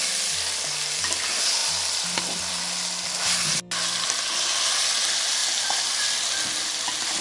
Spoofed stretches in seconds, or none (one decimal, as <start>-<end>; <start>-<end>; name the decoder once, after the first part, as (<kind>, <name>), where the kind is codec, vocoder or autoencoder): none